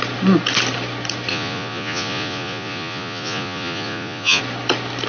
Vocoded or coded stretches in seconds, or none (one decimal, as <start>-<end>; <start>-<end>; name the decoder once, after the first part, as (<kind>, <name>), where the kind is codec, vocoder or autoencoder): 1.3-4.4 (vocoder, Vocos)